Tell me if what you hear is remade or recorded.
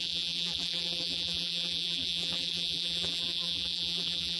remade